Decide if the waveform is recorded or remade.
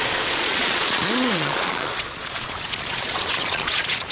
remade